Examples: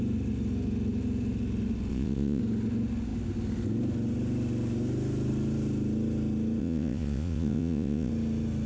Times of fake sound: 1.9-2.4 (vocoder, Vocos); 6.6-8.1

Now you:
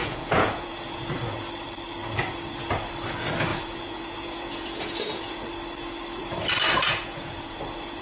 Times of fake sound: 0.0-1.0 (vocoder, Vocos); 3.5-5.4; 6.9-7.6

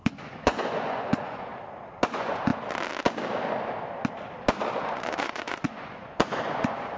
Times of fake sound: 0.0-1.5 (vocoder, Vocos); 2.1-2.5; 4.8-7.0